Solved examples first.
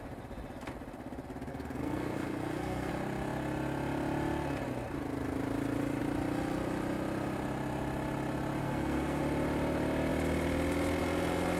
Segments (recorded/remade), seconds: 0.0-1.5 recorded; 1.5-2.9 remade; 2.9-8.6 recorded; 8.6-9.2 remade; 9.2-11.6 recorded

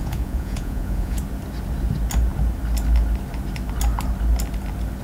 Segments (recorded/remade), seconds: 0.0-1.2 remade; 1.2-5.0 recorded

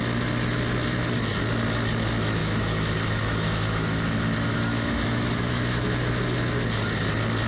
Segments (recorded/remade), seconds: 0.0-2.4 recorded; 2.4-6.1 remade; 6.1-7.5 recorded

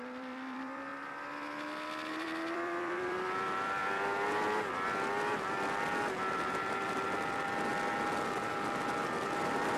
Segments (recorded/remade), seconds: 0.0-0.9 remade; 0.9-2.1 recorded; 2.1-3.8 remade; 3.8-9.0 recorded; 9.0-9.8 remade

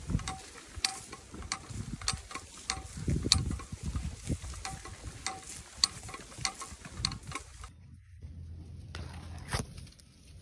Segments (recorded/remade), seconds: 0.0-10.4 recorded